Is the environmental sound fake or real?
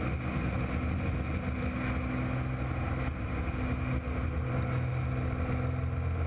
real